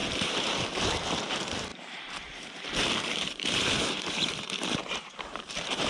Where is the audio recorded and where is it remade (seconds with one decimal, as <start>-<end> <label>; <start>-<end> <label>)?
0.0-5.9 remade